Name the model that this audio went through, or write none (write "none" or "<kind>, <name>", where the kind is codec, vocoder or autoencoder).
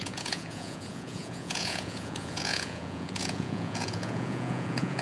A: vocoder, Vocos